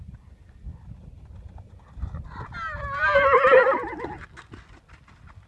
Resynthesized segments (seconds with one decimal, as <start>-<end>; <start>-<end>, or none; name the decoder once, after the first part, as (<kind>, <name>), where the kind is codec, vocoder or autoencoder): none